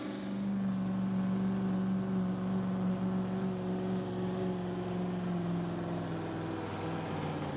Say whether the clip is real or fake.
real